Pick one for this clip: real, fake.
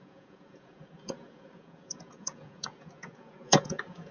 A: fake